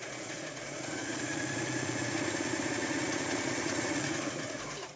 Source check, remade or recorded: remade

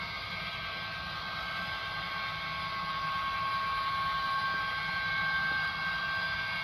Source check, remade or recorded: recorded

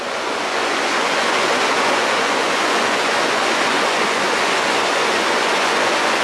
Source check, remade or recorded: remade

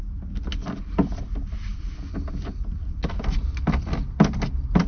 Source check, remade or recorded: recorded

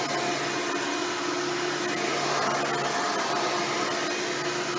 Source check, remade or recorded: recorded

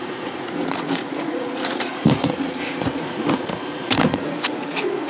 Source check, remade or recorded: remade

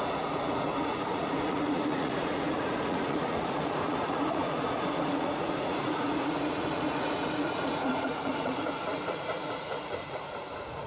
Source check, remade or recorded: remade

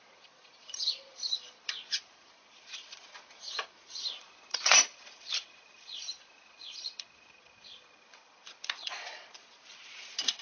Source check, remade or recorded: remade